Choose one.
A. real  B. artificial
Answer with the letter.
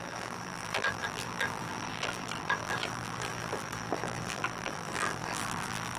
B